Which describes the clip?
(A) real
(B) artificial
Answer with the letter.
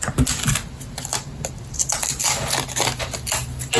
A